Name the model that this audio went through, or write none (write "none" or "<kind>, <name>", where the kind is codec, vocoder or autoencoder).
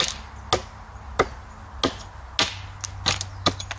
none